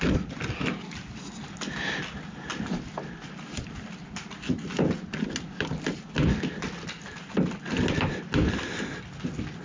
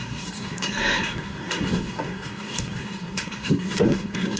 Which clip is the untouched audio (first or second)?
first